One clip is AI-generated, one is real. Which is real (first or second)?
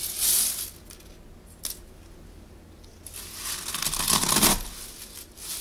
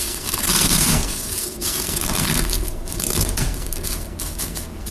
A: first